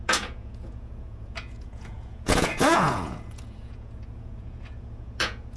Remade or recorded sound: remade